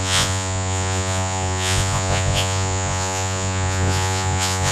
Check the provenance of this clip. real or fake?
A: fake